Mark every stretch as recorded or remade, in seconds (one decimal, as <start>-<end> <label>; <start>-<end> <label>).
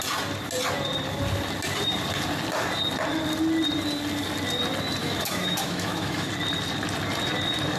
0.0-5.0 recorded; 5.0-6.3 remade; 6.3-7.8 recorded